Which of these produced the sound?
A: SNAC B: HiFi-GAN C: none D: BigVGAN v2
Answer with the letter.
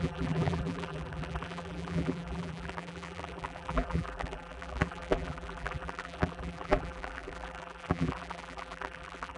D